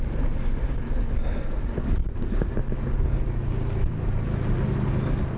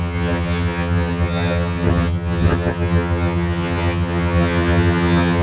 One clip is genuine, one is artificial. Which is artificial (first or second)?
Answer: second